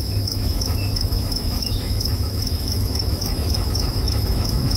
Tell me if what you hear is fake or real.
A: fake